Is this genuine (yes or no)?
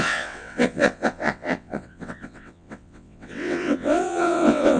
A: no